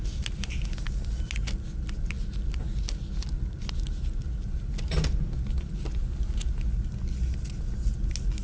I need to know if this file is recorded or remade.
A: recorded